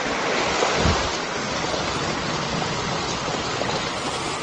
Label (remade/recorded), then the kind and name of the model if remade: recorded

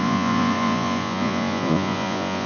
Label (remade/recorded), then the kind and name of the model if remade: remade, vocoder, Vocos